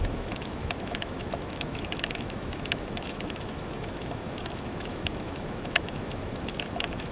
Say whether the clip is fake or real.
fake